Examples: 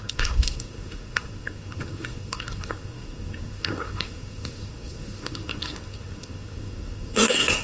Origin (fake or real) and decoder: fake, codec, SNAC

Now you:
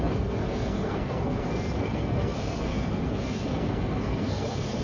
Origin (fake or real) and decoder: fake, codec, SNAC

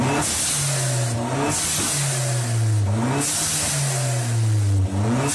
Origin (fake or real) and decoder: real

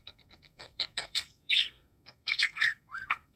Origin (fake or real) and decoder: fake, codec, SNAC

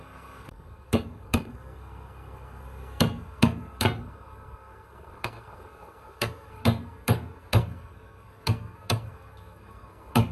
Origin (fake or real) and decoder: fake, codec, SNAC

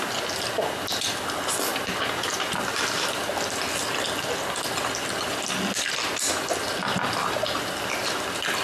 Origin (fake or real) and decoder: real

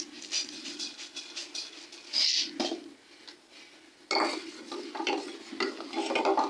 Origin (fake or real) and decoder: real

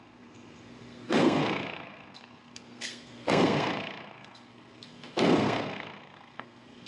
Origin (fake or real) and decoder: fake, codec, SNAC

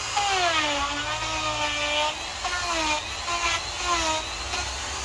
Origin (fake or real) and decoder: real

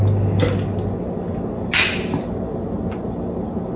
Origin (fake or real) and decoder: real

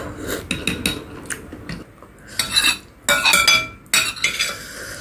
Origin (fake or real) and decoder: real